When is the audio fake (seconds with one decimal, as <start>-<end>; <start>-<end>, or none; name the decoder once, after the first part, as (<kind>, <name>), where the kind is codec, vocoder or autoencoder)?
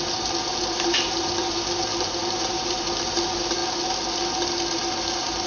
0.5-1.5 (vocoder, BigVGAN v2); 1.9-2.9